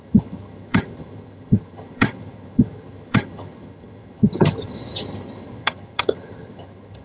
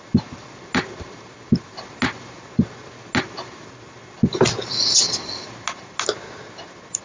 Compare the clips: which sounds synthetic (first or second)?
first